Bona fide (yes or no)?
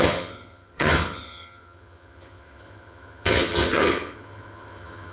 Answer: no